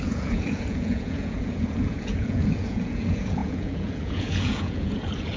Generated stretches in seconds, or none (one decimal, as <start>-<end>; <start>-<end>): 0.0-5.4